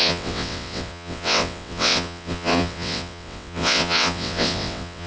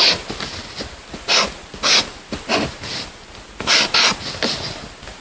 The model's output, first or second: first